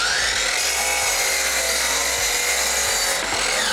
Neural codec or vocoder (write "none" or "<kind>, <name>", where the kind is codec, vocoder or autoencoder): none